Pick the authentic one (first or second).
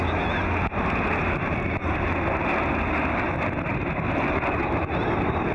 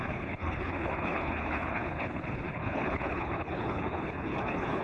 first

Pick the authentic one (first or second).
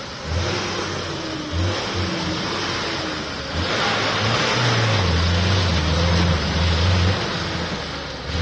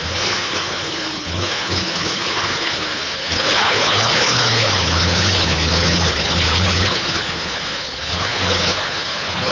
first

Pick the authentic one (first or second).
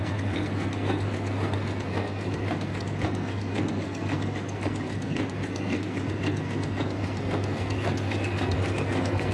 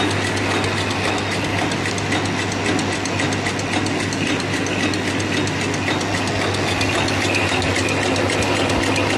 second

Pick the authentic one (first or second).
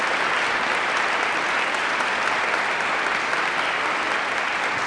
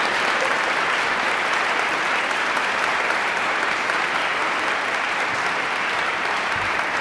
first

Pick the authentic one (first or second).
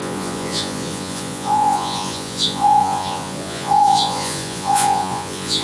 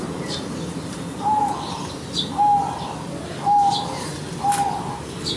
second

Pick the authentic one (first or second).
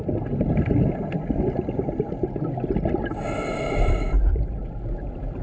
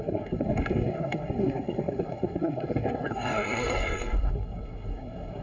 first